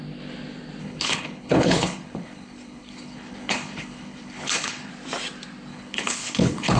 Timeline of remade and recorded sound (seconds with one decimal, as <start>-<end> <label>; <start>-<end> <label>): 0.0-0.8 recorded; 0.8-4.9 remade; 4.9-5.7 recorded; 5.7-6.8 remade